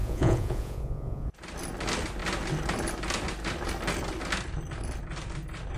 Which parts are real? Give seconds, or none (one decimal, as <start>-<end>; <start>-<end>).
1.3-5.8

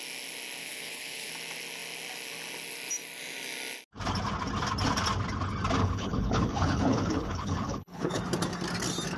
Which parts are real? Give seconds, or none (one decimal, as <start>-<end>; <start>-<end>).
0.0-0.6; 1.3-5.8; 8.2-9.2

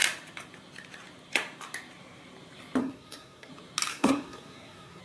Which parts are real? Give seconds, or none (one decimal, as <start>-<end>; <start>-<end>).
0.0-2.8; 3.5-3.9

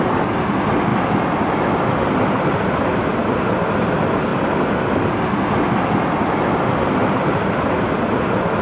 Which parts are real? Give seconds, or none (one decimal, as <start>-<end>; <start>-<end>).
0.0-8.6

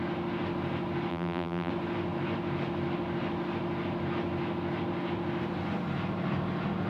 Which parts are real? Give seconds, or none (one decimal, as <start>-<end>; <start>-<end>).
0.0-1.1; 1.7-6.9

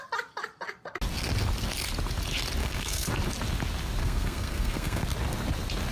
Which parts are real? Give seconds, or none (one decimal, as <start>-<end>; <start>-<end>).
0.0-2.6; 3.1-4.0; 5.0-5.9

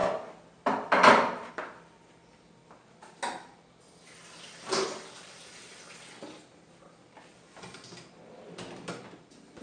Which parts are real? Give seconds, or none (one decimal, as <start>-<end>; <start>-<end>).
0.0-9.6